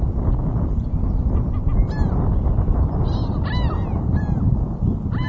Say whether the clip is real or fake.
real